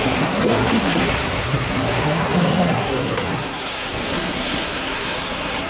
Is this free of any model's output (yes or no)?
no